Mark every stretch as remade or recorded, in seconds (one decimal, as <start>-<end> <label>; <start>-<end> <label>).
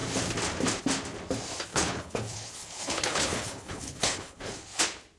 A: 0.0-1.7 recorded; 1.7-4.8 remade; 4.8-5.2 recorded